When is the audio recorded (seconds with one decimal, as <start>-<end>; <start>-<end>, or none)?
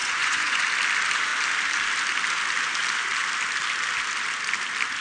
0.6-5.0